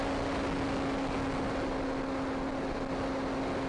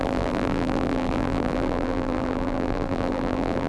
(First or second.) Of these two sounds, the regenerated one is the second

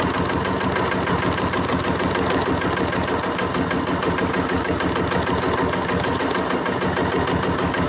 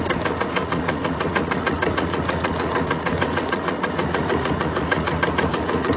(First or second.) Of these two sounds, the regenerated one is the second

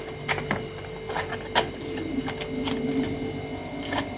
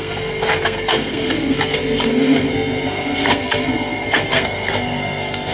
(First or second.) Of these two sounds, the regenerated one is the second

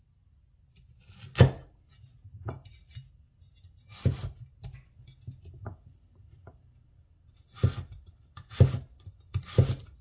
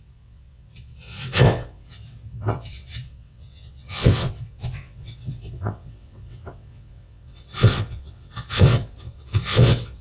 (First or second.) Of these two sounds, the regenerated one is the second